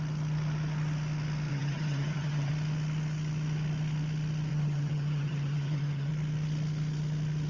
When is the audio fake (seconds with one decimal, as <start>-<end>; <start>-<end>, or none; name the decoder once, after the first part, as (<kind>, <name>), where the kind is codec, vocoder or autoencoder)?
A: 1.5-2.5 (vocoder, HiFi-GAN); 4.5-6.1